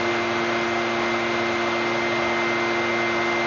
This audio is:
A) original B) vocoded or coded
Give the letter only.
A